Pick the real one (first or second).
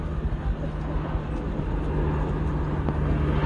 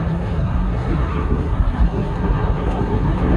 first